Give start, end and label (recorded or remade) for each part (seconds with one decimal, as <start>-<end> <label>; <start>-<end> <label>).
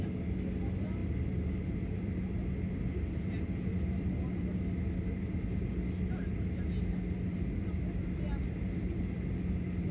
0.0-9.9 recorded